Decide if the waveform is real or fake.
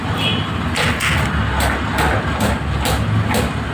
real